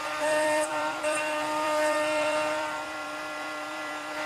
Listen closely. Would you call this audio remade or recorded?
remade